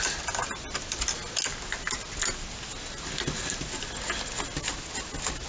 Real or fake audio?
real